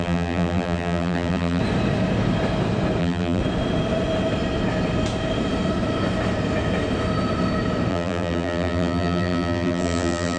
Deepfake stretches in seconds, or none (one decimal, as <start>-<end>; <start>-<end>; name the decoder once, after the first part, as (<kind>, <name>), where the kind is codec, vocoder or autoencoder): 0.0-1.6 (vocoder, BigVGAN v2); 3.0-3.4; 7.9-10.4